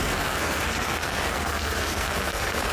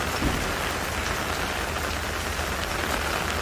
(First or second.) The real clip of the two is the second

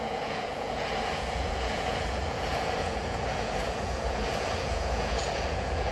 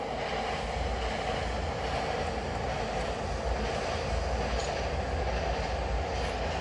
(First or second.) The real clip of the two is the second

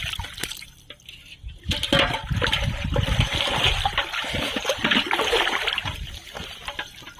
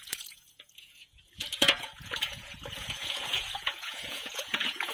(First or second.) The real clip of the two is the first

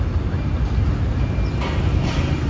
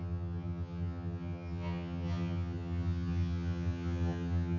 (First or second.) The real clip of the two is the first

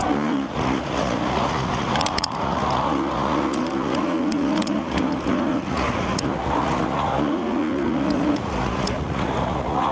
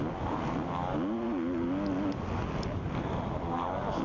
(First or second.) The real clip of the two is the second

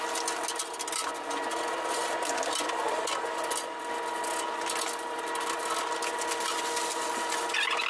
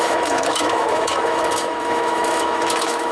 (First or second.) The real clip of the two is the first